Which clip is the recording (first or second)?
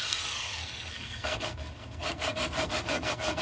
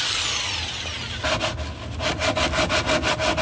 second